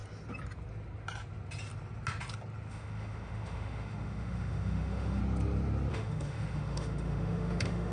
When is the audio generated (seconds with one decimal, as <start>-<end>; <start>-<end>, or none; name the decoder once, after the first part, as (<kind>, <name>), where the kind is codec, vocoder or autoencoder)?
2.7-5.2 (autoencoder, DAC-VAE); 5.9-7.9